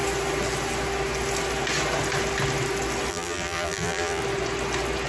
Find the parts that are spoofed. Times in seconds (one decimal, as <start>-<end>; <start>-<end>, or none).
3.1-4.2